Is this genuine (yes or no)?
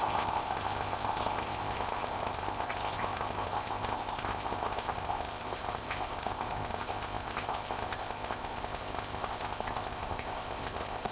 no